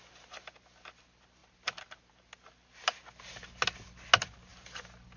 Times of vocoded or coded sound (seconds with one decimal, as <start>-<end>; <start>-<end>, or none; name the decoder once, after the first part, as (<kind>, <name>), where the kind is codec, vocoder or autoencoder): none